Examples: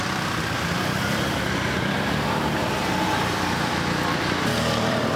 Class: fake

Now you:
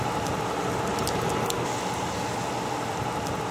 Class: real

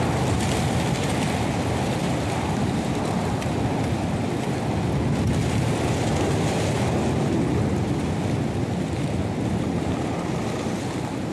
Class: real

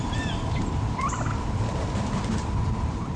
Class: fake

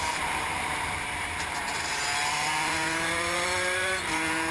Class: fake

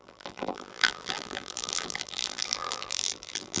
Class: fake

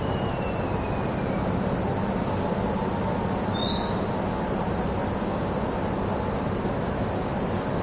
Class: real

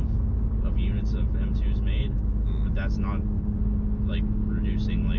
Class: real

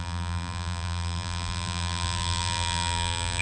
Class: fake